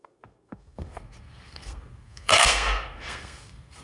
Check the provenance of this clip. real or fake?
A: fake